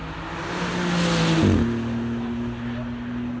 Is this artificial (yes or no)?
no